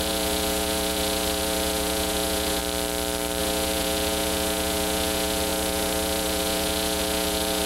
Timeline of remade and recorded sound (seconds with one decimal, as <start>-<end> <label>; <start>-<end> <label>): 0.0-2.6 remade; 2.6-3.4 recorded; 3.4-7.7 remade